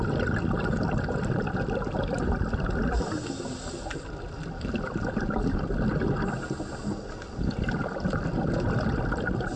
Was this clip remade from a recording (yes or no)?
no